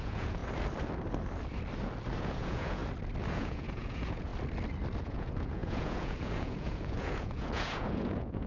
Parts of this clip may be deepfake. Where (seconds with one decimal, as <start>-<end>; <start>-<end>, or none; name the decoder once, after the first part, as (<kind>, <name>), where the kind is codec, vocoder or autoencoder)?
0.0-0.4 (vocoder, Vocos); 2.2-2.8; 3.3-4.3; 5.0-8.5